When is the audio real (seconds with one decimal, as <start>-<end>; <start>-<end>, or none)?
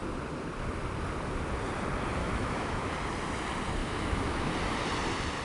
0.0-2.2; 2.9-3.8; 4.5-5.4